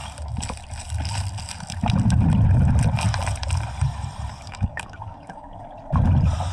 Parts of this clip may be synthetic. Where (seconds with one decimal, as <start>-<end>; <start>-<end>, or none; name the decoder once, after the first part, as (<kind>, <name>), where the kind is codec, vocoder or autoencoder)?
4.3-5.7 (codec, DAC)